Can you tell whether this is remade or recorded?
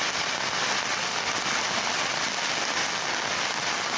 recorded